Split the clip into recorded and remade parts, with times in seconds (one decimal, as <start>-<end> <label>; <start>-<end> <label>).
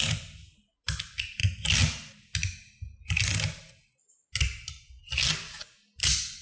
0.0-6.4 recorded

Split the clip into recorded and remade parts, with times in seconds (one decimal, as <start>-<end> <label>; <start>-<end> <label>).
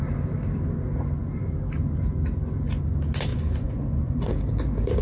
0.0-3.3 recorded; 3.3-4.3 remade; 4.3-5.0 recorded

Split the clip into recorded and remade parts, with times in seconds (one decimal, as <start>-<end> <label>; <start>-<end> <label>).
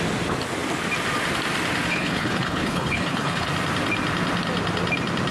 0.0-1.9 recorded; 1.9-3.5 remade; 3.5-5.3 recorded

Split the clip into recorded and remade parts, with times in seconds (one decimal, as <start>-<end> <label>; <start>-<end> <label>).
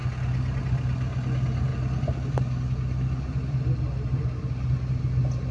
0.0-5.5 recorded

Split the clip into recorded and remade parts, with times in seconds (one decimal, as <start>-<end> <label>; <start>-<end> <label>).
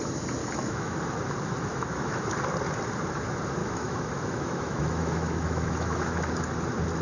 0.0-0.4 recorded; 0.4-1.0 remade; 1.0-1.7 recorded; 1.7-2.2 remade; 2.2-3.6 recorded; 3.6-6.2 remade; 6.2-7.0 recorded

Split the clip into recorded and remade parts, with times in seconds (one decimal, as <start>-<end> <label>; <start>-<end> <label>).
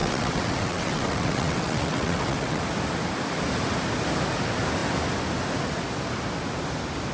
0.0-2.6 remade; 2.6-7.1 recorded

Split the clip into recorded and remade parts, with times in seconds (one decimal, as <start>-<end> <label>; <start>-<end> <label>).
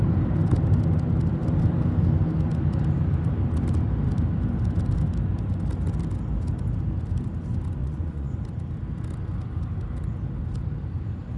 0.0-7.8 recorded; 7.8-8.4 remade; 8.4-11.4 recorded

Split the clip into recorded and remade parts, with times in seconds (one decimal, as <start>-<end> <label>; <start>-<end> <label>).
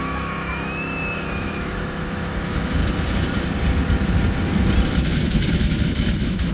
0.0-2.8 remade; 2.8-5.1 recorded; 5.1-6.5 remade